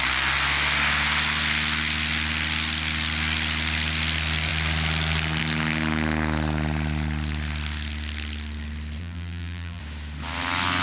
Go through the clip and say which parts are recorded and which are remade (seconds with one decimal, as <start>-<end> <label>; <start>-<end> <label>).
0.0-9.0 recorded; 9.0-9.8 remade; 9.8-10.8 recorded